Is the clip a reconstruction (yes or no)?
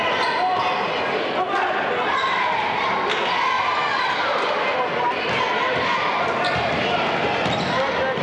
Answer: no